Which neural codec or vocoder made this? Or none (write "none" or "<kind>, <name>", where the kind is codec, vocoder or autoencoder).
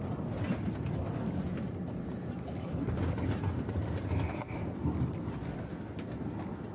none